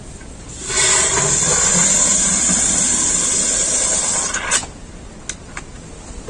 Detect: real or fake real